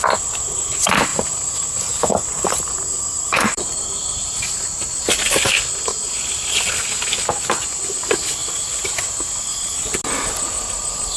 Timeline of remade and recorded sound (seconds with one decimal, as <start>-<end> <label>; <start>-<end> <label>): 0.0-1.1 recorded; 1.1-4.6 remade; 4.6-11.2 recorded